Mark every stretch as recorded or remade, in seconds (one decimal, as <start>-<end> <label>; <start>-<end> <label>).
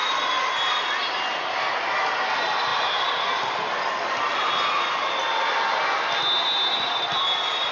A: 0.0-7.7 recorded